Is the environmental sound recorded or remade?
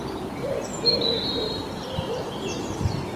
recorded